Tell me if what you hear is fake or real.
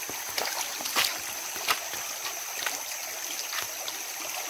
real